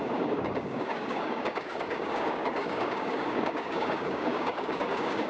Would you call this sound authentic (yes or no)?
no